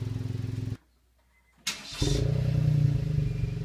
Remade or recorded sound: recorded